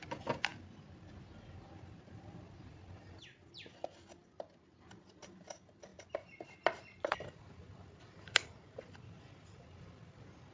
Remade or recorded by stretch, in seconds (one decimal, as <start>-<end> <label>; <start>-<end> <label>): 0.0-4.2 remade; 4.2-4.9 recorded; 4.9-10.5 remade